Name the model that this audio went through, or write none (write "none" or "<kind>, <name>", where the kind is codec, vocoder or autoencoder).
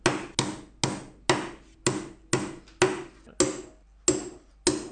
none